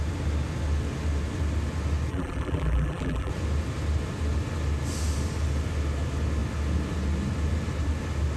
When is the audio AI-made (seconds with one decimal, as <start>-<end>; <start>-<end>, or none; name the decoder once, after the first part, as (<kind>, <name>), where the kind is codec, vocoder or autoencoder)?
2.1-3.3 (vocoder, BigVGAN v2)